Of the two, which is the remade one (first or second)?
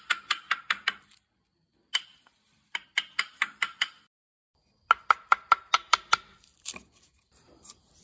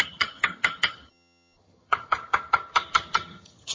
second